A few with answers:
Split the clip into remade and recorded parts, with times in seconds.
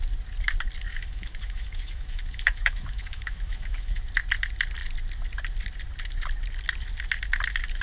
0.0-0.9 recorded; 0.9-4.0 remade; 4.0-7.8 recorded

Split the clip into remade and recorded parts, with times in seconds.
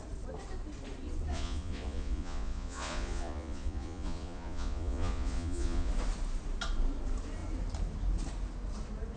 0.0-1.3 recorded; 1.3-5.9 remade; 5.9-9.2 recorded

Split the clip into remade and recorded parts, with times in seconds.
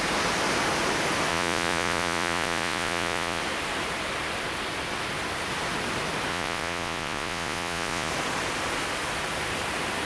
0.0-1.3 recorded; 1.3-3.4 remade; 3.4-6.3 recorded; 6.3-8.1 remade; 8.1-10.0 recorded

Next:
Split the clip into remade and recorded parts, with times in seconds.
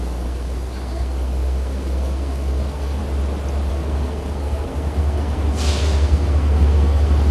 0.0-3.0 remade; 3.0-3.7 recorded; 3.7-7.3 remade